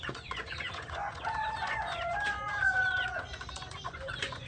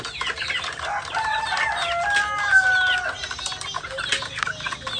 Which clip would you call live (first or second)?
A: second